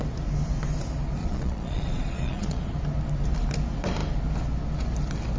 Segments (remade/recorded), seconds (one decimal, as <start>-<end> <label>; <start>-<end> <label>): 0.0-1.2 recorded; 1.2-2.6 remade; 2.6-5.4 recorded